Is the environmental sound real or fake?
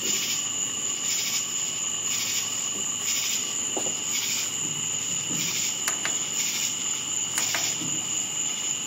real